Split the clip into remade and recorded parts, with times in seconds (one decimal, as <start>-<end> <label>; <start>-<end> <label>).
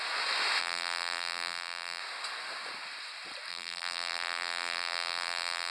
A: 0.0-0.6 recorded; 0.6-2.0 remade; 2.0-3.5 recorded; 3.5-5.7 remade